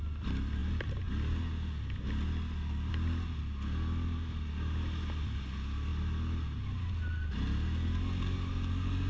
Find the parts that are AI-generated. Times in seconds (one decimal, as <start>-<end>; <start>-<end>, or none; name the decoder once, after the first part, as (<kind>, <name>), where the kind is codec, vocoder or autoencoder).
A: none